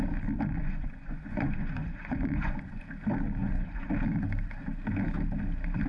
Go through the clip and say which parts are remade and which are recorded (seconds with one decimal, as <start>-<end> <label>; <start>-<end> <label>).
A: 0.0-0.6 recorded; 0.6-2.8 remade; 2.8-3.4 recorded; 3.4-3.9 remade; 3.9-5.9 recorded